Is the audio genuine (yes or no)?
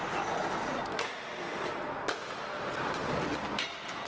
yes